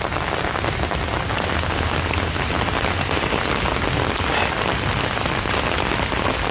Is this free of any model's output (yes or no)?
yes